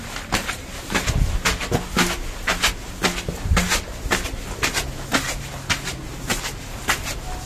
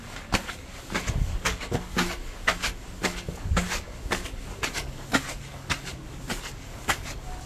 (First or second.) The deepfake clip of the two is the second